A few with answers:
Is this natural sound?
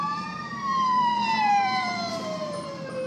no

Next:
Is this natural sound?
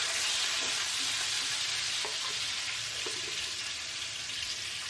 yes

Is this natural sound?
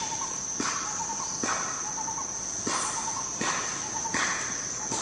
yes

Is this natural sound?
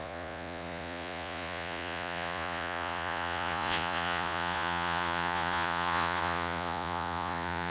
no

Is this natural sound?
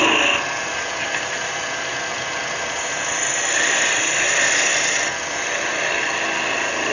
yes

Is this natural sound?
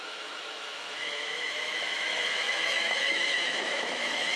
no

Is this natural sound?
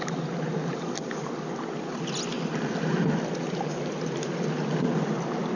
yes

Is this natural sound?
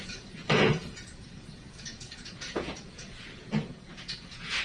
no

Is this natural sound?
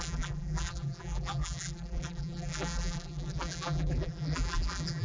no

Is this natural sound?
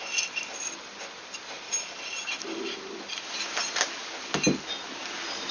yes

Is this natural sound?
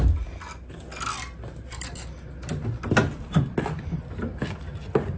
yes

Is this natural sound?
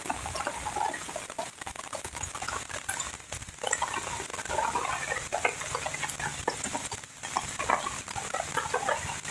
yes